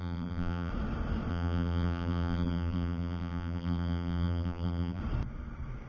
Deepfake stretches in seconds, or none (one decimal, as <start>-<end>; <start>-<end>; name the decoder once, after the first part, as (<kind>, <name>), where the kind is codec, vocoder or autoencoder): 0.0-0.7 (vocoder, BigVGAN v2); 1.3-5.0